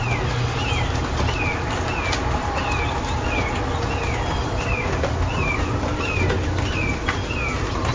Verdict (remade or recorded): recorded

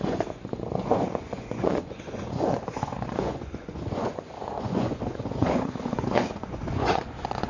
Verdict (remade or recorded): remade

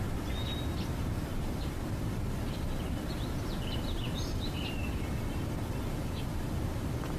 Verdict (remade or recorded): recorded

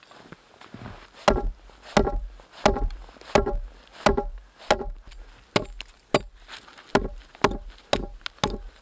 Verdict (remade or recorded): recorded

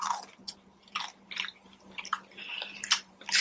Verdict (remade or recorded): remade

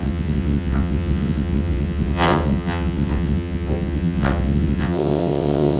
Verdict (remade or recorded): remade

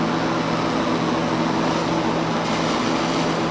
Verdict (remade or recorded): recorded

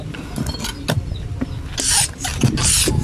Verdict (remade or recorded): recorded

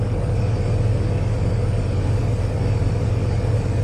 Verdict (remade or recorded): remade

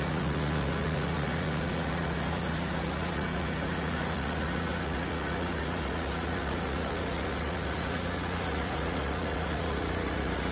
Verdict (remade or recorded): remade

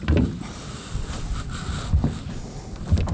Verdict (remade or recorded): recorded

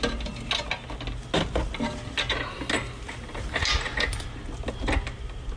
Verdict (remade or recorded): recorded